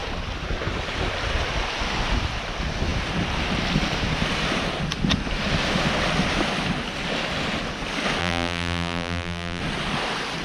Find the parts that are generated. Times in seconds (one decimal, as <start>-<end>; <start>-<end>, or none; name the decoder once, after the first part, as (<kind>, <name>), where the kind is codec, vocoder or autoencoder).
8.2-9.6 (vocoder, BigVGAN v2)